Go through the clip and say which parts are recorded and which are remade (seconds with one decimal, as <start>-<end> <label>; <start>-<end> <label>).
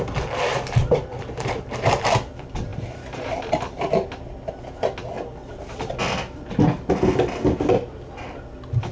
0.0-2.7 recorded; 2.7-3.4 remade; 3.4-8.9 recorded